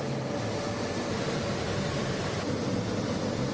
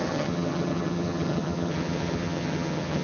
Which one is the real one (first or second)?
first